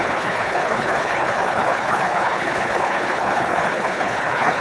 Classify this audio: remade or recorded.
remade